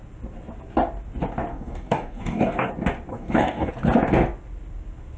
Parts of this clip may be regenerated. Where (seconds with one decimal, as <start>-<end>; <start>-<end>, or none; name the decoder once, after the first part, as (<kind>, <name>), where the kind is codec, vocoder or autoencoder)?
1.5-2.7 (codec, DAC); 3.1-3.7

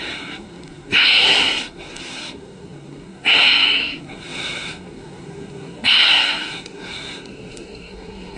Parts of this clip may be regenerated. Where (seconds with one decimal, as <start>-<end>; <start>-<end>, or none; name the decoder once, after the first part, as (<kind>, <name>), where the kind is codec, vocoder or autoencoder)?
0.0-8.4 (codec, SNAC)

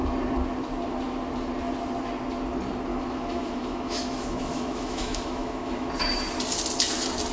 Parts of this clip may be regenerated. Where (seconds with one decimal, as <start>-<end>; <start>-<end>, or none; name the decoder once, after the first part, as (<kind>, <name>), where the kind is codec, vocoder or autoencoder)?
2.9-5.9 (autoencoder, DAC-VAE)

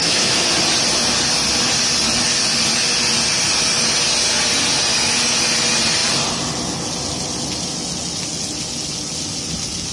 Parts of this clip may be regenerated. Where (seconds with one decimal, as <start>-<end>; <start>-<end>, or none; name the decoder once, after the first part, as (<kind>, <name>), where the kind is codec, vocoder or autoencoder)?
0.0-0.5 (autoencoder, DAC-VAE)